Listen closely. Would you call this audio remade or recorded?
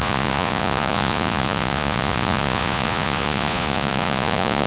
remade